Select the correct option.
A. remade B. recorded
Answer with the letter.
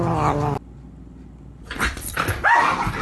B